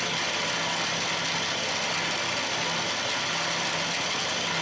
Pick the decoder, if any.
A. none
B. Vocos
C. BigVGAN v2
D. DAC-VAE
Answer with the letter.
A